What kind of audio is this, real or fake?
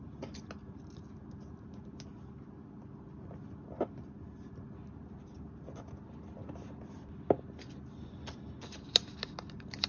real